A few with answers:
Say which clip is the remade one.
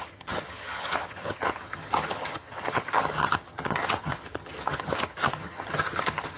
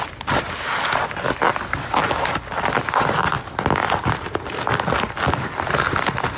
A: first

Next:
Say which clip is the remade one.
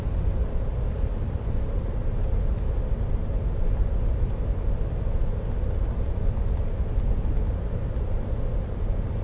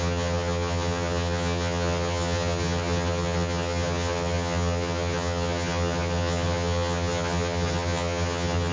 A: second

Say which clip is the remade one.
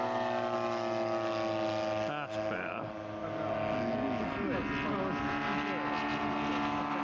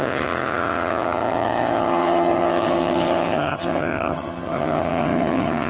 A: second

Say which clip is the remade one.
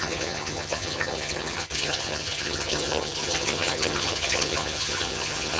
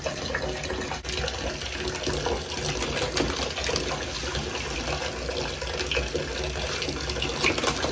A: first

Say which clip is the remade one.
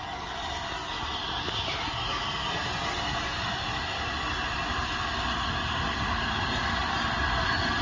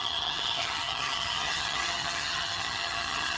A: second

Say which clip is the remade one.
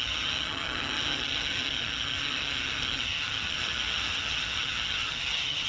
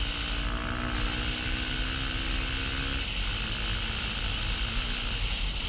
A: first